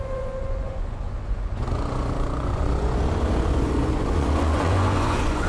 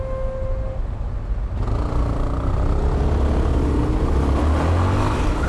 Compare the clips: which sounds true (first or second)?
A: second